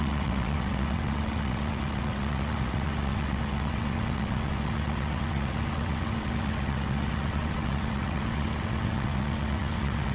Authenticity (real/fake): fake